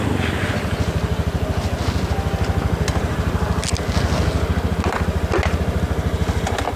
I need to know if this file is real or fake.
real